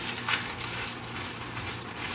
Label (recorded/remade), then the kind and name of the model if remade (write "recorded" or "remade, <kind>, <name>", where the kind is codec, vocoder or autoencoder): recorded